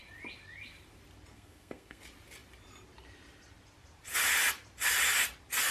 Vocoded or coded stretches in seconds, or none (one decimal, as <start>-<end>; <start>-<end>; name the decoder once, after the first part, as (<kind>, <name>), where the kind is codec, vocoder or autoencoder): 1.3-2.0 (codec, SNAC)